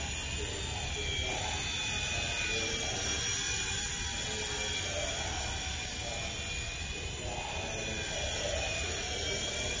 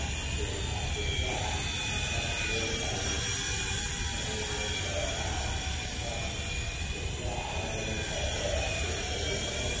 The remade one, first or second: second